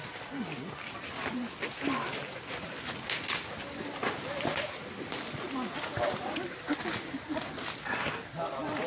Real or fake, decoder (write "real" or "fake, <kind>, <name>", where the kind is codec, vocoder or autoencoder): real